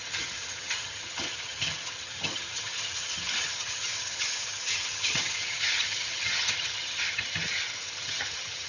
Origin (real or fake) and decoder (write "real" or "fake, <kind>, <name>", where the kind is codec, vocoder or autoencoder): fake, vocoder, HiFi-GAN